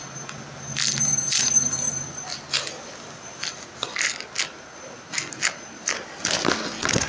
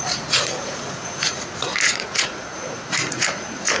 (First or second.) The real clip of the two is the first